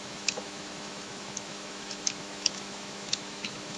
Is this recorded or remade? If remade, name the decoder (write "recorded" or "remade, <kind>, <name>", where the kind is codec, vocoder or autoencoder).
remade, autoencoder, DAC-VAE